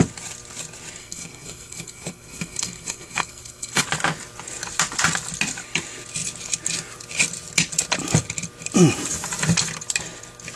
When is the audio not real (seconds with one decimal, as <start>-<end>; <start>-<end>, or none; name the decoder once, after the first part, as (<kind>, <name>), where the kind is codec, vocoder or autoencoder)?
1.0-3.8 (codec, SNAC)